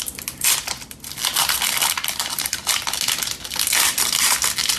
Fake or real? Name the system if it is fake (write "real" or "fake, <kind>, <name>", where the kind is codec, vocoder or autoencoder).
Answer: real